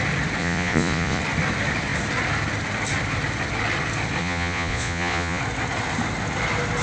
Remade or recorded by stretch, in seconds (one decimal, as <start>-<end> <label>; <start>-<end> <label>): 0.0-0.4 recorded; 0.4-1.2 remade; 1.2-4.2 recorded; 4.2-5.4 remade; 5.4-6.8 recorded